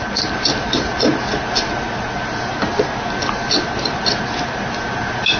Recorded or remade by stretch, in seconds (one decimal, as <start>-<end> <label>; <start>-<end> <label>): 0.0-5.4 recorded